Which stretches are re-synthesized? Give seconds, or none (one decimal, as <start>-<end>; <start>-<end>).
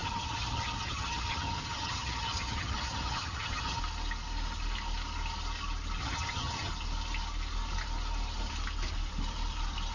0.0-3.8; 6.0-6.7